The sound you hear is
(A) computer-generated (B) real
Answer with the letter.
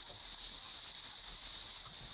B